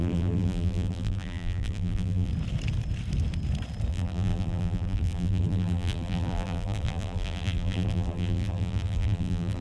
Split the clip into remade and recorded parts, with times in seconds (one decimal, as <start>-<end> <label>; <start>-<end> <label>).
0.0-2.3 remade; 2.3-3.9 recorded; 3.9-9.6 remade